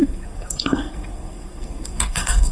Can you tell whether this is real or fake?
fake